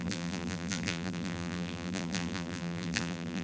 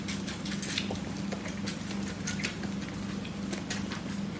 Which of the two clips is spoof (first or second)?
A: first